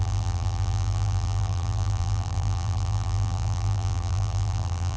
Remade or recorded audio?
remade